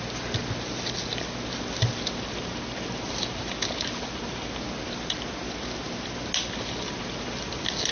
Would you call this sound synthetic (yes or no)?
no